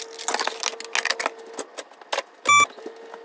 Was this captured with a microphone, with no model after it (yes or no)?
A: yes